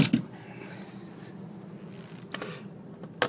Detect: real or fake real